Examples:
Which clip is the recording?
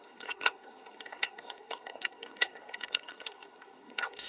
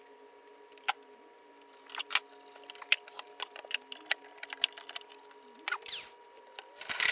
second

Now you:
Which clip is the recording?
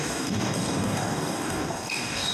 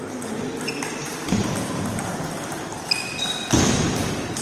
second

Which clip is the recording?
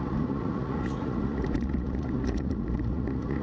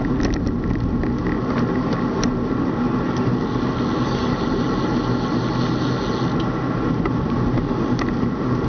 second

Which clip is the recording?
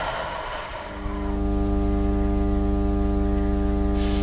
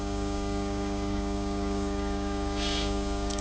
first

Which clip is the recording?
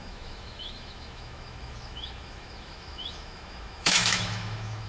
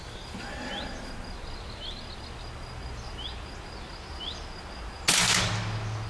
second